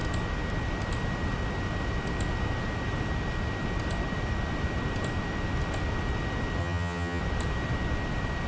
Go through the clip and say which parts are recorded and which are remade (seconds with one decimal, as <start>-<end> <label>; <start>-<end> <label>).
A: 0.0-6.6 recorded; 6.6-7.2 remade; 7.2-8.5 recorded